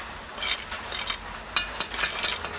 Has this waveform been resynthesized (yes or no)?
no